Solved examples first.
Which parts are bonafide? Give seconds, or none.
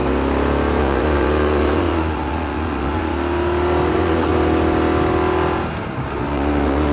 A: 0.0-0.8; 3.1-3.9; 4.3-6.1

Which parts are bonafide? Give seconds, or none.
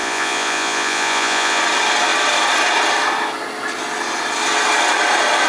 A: 1.6-5.5